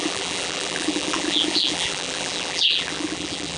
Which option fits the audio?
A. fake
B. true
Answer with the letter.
A